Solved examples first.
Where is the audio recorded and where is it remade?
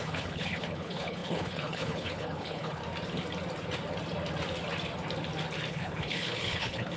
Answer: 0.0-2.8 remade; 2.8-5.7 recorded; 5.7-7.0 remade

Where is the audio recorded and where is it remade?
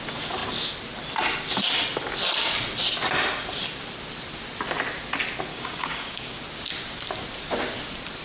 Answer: 0.0-5.5 recorded; 5.5-6.4 remade; 6.4-8.2 recorded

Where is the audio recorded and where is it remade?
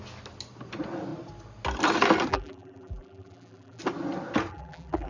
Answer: 0.0-2.3 recorded; 2.3-3.8 remade; 3.8-4.5 recorded; 4.5-5.1 remade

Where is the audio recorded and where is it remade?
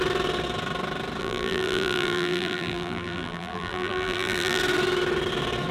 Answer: 0.0-1.2 recorded; 1.2-4.6 remade; 4.6-5.7 recorded